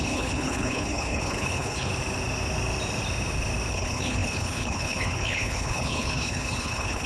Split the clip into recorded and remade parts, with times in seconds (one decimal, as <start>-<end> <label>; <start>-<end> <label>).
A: 0.0-1.9 remade; 1.9-3.7 recorded; 3.7-7.1 remade